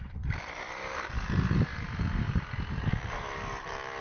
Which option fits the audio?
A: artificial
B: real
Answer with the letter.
B